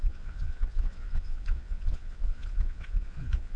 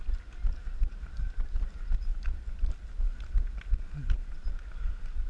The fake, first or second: first